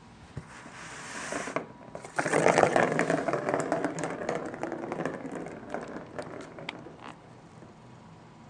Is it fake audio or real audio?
real